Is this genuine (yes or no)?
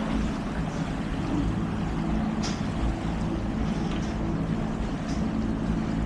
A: yes